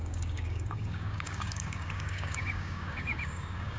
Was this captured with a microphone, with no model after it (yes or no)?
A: no